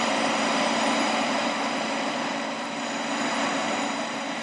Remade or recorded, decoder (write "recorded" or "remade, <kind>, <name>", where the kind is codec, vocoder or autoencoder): remade, vocoder, BigVGAN v2